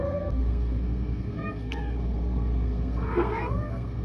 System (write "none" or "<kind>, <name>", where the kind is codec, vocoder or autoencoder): codec, SNAC